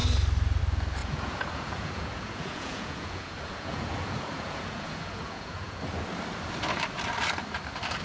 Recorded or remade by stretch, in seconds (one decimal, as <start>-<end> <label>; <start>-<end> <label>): 0.0-1.0 recorded; 1.0-5.8 remade; 5.8-8.0 recorded